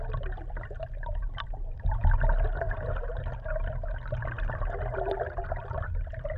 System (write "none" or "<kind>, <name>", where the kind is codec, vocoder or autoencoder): none